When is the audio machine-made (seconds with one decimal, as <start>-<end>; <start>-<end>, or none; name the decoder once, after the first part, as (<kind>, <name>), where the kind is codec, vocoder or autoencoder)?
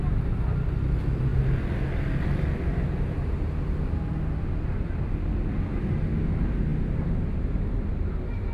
none